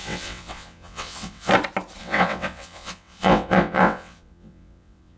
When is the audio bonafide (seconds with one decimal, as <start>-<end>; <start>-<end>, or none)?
1.5-2.0